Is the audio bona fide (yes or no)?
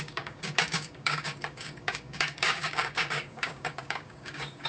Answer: no